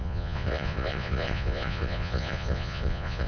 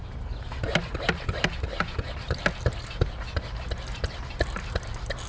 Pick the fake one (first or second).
first